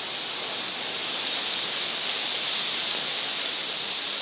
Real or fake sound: real